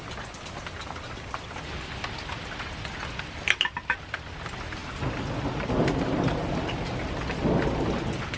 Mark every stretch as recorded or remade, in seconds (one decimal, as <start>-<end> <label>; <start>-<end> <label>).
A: 0.0-8.4 recorded

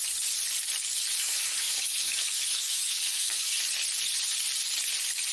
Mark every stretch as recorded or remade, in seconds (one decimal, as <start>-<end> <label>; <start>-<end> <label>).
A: 0.0-1.2 recorded; 1.2-3.7 remade; 3.7-5.3 recorded

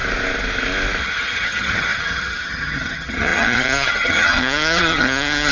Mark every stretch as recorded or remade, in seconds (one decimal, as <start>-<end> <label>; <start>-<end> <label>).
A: 0.0-1.0 recorded; 1.0-5.5 remade